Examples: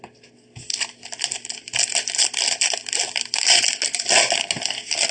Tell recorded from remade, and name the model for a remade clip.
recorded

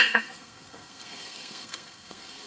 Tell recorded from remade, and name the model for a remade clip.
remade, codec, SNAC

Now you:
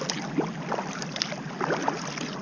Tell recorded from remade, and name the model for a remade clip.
recorded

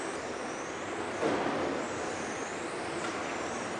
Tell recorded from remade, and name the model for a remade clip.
remade, vocoder, BigVGAN v2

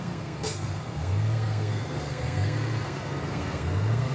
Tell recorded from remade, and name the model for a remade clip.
remade, codec, SNAC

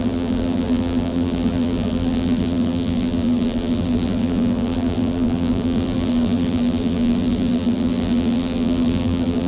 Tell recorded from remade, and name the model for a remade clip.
remade, vocoder, BigVGAN v2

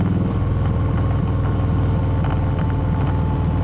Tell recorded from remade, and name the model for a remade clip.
recorded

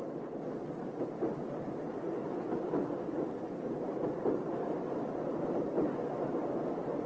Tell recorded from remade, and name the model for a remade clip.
recorded